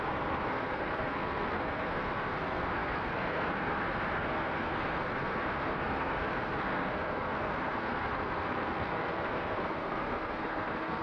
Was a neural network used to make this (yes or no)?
yes